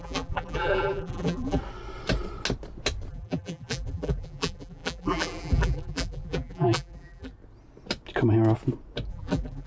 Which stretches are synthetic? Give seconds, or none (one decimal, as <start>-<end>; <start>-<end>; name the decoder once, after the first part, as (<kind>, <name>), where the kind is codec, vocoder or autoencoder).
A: 0.0-1.6 (vocoder, BigVGAN v2); 3.1-7.3; 9.1-9.7